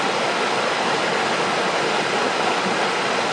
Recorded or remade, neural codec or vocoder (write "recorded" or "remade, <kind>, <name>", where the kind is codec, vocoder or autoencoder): recorded